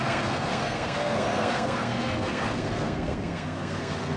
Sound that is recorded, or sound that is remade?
remade